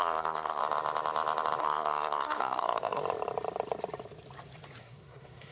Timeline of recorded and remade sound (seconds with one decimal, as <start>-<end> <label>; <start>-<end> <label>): 0.0-0.6 remade; 0.6-1.6 recorded; 1.6-3.0 remade; 3.0-4.8 recorded; 4.8-5.5 remade